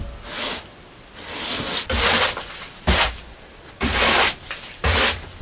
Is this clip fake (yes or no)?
no